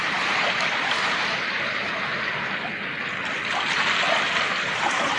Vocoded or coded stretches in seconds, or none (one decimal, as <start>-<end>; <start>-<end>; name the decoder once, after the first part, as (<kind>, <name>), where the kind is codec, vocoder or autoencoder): 0.0-2.1 (vocoder, BigVGAN v2); 4.7-5.2

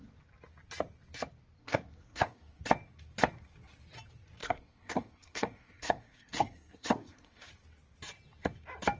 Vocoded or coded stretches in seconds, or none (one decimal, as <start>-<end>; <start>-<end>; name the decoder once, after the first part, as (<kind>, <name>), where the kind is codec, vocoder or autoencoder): 1.6-2.6 (codec, SNAC); 4.4-7.5

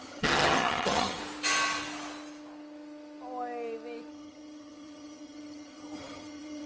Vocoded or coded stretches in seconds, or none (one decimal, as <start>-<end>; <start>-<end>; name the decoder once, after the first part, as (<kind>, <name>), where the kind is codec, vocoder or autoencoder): 0.0-1.2 (vocoder, HiFi-GAN); 4.1-6.7

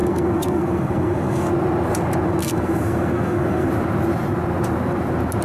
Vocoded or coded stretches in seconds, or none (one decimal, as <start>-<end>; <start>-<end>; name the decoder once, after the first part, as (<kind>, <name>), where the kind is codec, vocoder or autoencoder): 0.0-1.5 (codec, SNAC); 2.4-3.7

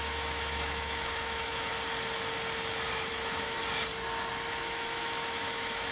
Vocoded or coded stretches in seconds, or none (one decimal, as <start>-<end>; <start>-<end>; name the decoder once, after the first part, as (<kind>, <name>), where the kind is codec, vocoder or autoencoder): 0.0-1.7 (autoencoder, DAC-VAE); 3.1-3.6; 4.5-5.9

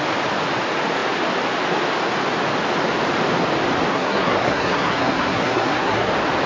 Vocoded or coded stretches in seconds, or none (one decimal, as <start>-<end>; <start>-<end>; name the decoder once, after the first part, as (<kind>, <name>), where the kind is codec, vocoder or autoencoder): 3.9-6.1 (codec, SNAC)

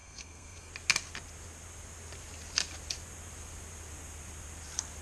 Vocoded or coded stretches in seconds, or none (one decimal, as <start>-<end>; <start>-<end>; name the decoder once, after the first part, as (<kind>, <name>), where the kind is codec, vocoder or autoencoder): 0.0-0.7 (codec, SNAC)

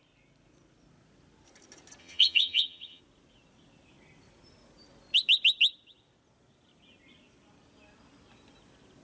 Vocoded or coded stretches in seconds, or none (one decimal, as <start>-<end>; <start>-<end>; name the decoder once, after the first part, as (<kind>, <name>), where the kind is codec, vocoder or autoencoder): 2.0-3.0 (vocoder, HiFi-GAN)